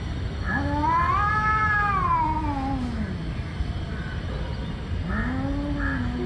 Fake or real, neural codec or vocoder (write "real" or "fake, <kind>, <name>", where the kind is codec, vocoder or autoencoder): real